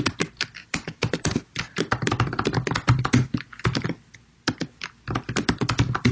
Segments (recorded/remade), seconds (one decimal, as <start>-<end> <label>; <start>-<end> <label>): 0.0-0.6 recorded; 0.6-1.1 remade; 1.1-6.1 recorded

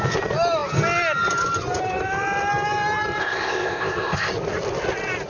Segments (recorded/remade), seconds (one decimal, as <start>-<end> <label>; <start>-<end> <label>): 0.0-3.2 recorded; 3.2-4.3 remade; 4.3-5.3 recorded

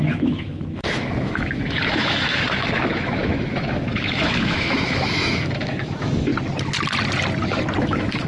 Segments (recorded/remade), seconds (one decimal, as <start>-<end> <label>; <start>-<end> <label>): 0.0-6.3 remade; 6.3-7.8 recorded; 7.8-8.3 remade

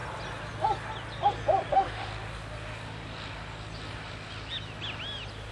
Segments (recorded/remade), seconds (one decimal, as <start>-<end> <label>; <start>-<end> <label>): 0.0-1.7 recorded; 1.7-2.1 remade; 2.1-5.5 recorded

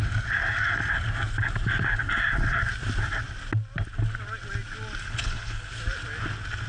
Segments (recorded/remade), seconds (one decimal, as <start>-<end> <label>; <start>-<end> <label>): 0.0-5.0 recorded; 5.0-5.7 remade; 5.7-6.7 recorded